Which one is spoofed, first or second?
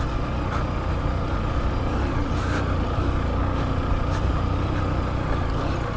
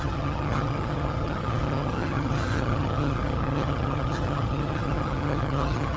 second